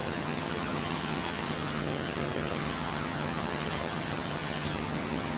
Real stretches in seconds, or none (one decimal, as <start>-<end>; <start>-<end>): none